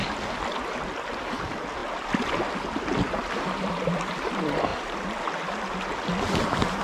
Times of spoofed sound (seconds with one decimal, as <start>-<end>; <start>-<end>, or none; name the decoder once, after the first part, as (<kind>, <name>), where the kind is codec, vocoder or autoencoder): none